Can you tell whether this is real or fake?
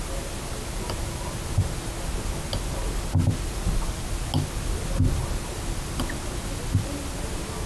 real